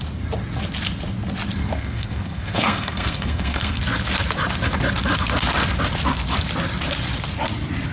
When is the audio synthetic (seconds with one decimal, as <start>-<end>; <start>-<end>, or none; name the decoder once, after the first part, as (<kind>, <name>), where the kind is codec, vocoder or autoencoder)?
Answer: 1.6-3.8 (codec, SNAC)